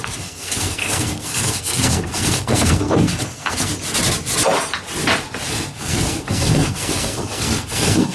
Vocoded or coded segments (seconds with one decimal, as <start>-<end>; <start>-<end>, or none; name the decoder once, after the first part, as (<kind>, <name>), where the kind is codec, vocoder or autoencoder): 0.0-3.7 (codec, SNAC); 5.5-8.1